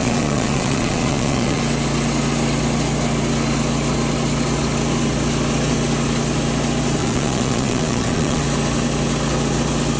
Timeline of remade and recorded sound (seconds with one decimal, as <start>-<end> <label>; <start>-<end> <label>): 0.0-1.6 remade; 1.6-7.0 recorded; 7.0-8.4 remade; 8.4-10.0 recorded